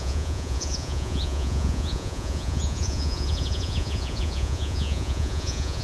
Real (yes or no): no